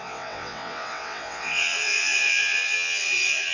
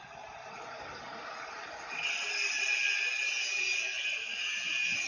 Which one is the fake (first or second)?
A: first